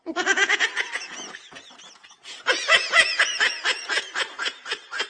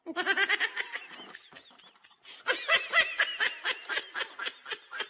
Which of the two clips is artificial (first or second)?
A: first